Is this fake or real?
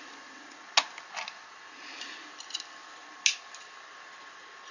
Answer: real